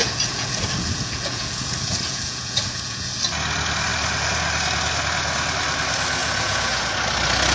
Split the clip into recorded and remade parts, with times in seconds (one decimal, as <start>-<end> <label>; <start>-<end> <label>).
0.0-3.2 remade; 3.2-6.2 recorded; 6.2-6.9 remade; 6.9-7.5 recorded